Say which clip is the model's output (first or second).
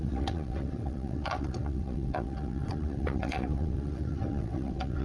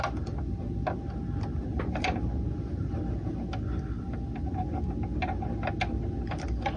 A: first